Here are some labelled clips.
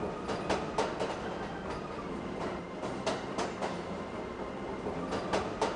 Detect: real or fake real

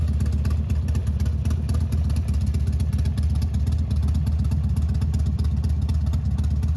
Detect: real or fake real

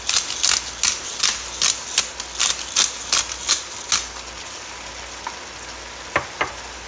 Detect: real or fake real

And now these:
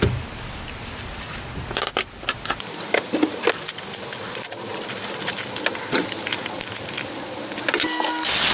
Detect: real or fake real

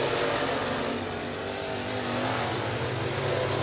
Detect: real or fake real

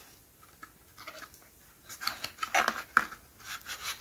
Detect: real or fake real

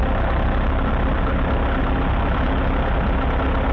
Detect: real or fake real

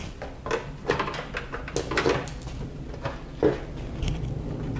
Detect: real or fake real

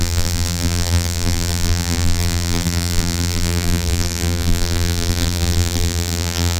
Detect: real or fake fake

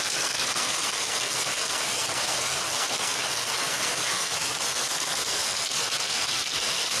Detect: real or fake fake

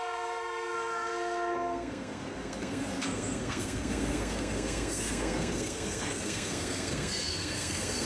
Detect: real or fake fake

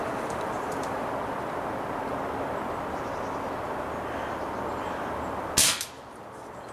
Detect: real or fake real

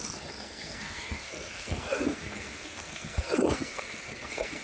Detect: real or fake fake